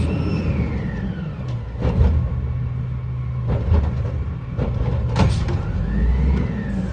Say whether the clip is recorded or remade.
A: recorded